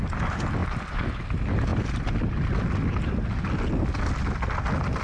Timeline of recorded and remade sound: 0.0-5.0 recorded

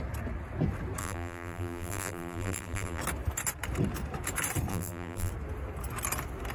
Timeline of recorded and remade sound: 0.0-1.0 recorded; 1.0-3.0 remade; 3.0-4.7 recorded; 4.7-5.3 remade; 5.3-6.5 recorded

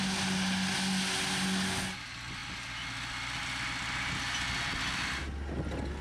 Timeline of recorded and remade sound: 0.0-6.0 recorded

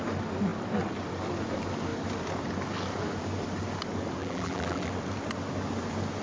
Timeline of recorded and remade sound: 0.0-4.2 recorded; 4.2-4.9 remade; 4.9-6.2 recorded

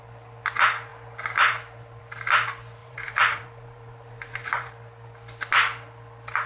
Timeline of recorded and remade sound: 0.0-2.8 recorded; 2.8-4.7 remade; 4.7-6.5 recorded

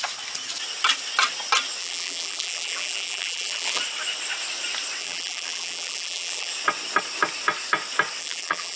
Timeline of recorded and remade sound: 0.0-1.8 recorded; 1.8-3.8 remade; 3.8-5.0 recorded; 5.0-6.5 remade; 6.5-8.2 recorded; 8.2-8.8 remade

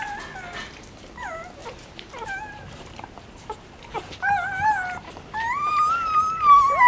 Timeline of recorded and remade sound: 0.0-1.6 recorded; 1.6-5.7 remade; 5.7-6.9 recorded

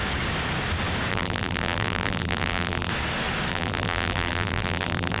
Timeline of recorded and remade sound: 0.0-1.1 recorded; 1.1-2.9 remade; 2.9-3.5 recorded; 3.5-5.2 remade